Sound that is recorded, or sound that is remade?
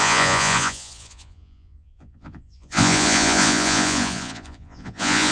remade